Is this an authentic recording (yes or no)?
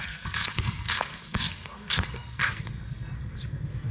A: no